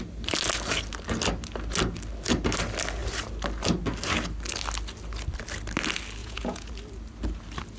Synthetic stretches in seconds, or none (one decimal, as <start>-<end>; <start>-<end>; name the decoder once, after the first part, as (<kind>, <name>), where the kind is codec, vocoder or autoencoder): 6.2-6.7 (vocoder, Vocos)